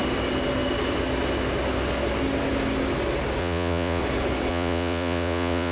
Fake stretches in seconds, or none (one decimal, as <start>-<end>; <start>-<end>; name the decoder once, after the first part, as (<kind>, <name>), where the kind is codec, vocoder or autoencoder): 3.4-4.0 (vocoder, Vocos); 4.5-5.7